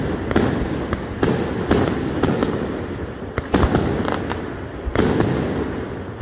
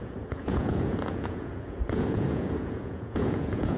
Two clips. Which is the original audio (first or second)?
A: first